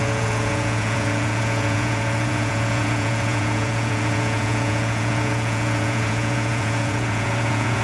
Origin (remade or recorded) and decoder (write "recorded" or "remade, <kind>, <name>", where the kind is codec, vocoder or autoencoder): remade, vocoder, Vocos